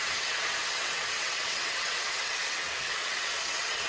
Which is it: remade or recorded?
remade